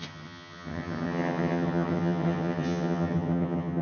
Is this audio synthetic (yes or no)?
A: yes